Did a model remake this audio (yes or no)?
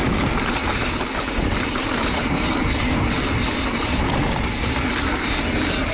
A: no